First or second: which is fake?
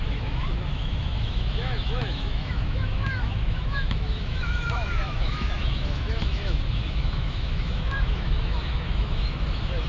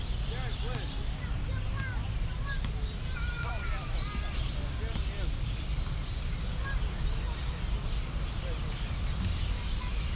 first